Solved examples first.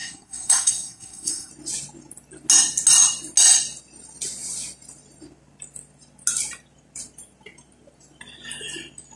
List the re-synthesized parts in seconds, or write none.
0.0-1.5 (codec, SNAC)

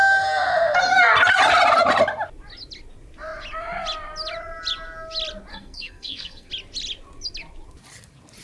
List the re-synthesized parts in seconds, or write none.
5.5-6.5 (codec, SNAC)